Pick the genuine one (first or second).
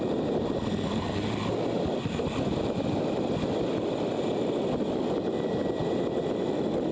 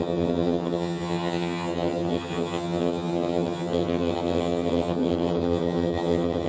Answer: first